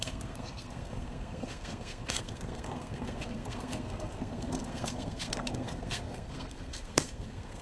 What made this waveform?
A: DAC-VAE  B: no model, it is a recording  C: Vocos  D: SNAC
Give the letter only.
D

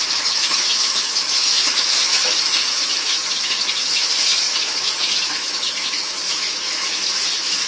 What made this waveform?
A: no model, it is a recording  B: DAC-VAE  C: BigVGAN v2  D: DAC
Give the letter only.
B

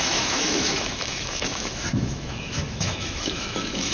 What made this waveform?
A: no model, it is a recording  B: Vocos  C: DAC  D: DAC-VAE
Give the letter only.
D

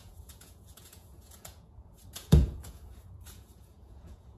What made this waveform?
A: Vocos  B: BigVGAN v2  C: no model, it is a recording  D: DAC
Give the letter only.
A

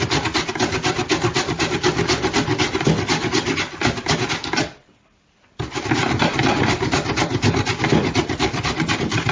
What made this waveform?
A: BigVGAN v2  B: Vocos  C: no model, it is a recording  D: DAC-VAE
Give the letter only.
C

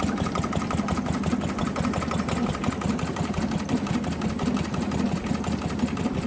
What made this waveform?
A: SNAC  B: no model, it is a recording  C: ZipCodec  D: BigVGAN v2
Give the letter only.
B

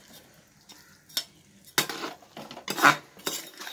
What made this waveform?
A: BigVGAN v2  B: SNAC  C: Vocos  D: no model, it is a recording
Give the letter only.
D